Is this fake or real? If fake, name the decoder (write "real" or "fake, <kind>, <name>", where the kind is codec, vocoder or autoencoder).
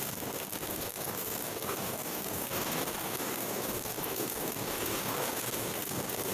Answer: fake, codec, DAC